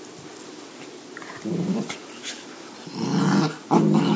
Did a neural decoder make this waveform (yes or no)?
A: no